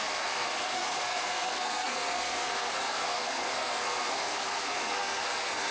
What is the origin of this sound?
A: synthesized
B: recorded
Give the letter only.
A